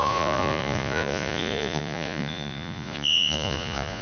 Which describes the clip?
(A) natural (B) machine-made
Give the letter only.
B